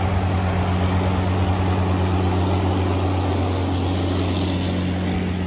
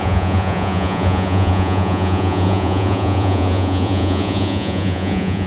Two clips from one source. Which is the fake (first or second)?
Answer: second